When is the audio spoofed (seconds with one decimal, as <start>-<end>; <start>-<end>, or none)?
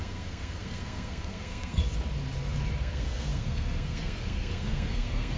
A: 0.0-1.8; 2.8-5.4